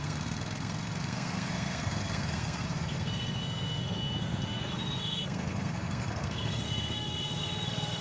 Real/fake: fake